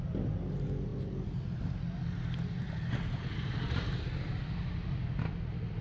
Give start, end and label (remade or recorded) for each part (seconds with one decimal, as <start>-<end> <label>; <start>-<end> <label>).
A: 0.0-5.8 recorded